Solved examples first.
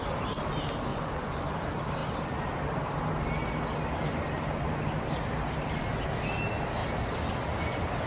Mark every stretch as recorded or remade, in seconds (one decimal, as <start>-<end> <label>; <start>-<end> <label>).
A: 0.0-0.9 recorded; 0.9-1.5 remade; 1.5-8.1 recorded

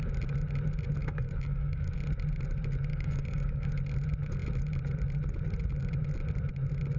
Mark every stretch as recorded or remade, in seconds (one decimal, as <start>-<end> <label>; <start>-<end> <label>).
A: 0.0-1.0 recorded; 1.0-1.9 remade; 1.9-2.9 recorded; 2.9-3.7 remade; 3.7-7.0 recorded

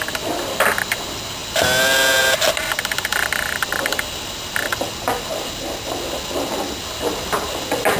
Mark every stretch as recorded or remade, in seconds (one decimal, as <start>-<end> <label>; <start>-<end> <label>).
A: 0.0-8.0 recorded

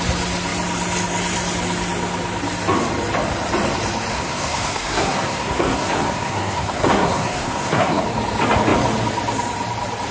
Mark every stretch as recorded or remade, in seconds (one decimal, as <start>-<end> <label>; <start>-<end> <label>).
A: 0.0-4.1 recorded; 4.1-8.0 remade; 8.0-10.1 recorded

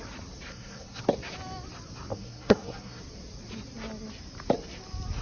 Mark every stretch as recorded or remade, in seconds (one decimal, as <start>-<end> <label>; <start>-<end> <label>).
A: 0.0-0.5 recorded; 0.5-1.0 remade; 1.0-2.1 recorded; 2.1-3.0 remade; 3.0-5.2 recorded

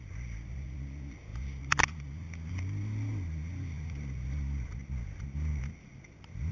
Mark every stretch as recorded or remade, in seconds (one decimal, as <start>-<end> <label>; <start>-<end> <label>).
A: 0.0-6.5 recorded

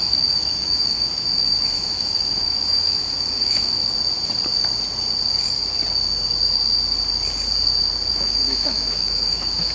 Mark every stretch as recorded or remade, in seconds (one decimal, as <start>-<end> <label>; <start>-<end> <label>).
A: 0.0-3.8 remade; 3.8-8.1 recorded; 8.1-9.7 remade